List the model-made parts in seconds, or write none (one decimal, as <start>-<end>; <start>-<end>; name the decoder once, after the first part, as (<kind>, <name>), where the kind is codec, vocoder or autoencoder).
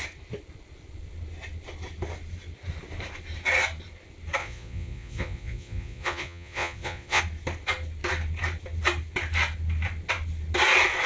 4.4-7.2 (vocoder, Vocos)